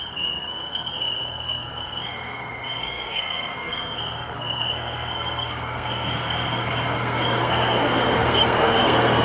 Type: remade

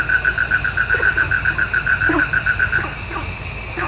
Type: recorded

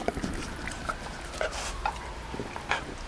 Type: recorded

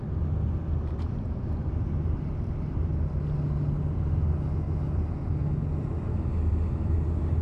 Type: recorded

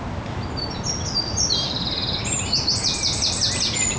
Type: recorded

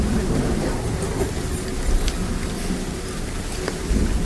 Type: recorded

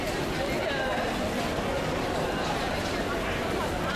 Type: recorded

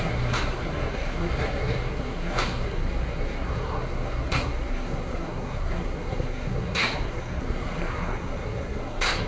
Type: remade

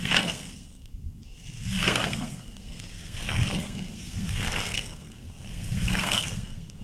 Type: remade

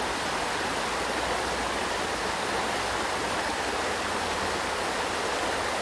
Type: recorded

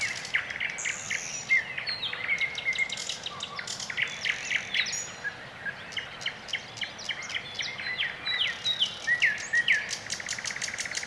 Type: recorded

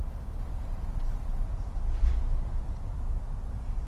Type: recorded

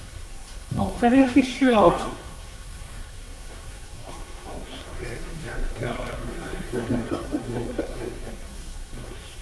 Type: remade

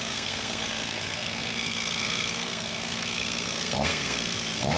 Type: remade